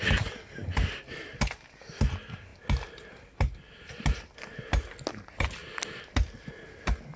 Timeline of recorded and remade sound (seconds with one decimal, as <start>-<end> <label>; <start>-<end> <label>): 0.0-7.2 recorded